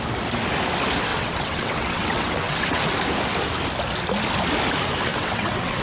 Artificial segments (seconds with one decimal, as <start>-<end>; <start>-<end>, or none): 1.1-2.8; 5.1-5.8